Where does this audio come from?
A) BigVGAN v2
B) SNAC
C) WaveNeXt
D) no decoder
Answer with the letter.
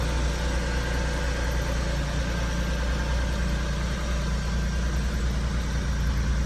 D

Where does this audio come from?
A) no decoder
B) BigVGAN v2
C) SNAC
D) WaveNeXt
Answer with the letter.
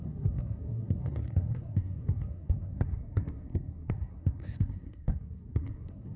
C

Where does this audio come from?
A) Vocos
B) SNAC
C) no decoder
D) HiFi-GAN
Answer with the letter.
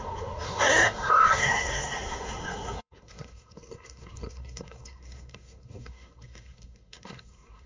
B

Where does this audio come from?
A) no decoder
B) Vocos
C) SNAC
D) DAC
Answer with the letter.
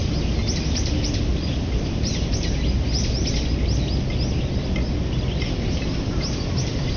A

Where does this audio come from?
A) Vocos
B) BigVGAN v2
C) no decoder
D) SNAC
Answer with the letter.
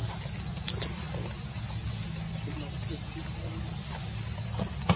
C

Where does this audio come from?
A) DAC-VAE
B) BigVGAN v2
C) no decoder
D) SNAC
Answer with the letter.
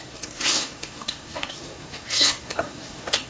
D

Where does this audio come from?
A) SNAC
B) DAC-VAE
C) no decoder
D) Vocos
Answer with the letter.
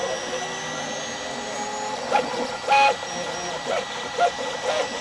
C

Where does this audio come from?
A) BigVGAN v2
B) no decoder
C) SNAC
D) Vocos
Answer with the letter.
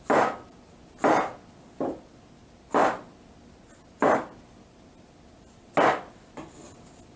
B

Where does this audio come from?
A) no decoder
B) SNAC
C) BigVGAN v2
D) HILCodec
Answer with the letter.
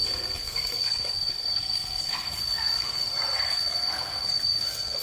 B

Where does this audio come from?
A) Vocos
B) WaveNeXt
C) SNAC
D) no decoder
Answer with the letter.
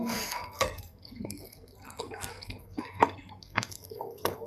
C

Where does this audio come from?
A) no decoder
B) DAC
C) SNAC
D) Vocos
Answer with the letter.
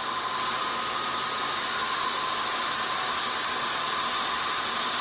A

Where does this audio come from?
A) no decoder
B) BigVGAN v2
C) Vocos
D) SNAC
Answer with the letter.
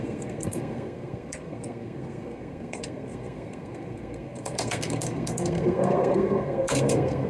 D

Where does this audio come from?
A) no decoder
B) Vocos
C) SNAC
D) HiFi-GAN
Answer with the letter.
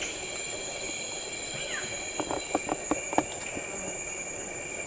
A